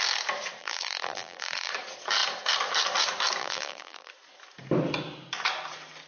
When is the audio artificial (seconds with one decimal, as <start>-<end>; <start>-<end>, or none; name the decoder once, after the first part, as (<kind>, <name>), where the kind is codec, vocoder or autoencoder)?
0.6-1.7 (vocoder, BigVGAN v2); 3.4-4.1